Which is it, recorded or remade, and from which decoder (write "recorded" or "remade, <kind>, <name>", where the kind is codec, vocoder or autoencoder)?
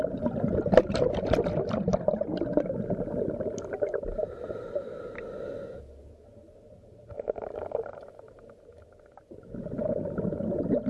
recorded